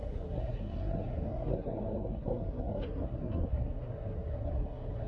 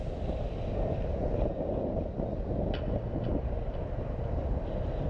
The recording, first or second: second